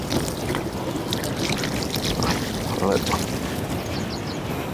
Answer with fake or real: real